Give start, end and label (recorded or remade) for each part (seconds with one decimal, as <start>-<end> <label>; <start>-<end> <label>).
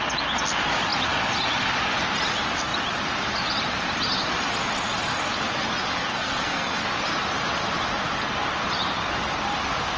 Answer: 0.0-6.1 recorded; 6.1-6.8 remade; 6.8-10.0 recorded